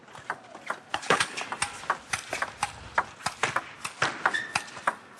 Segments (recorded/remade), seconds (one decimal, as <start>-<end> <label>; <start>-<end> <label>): 0.0-0.9 recorded; 0.9-1.4 remade; 1.4-5.2 recorded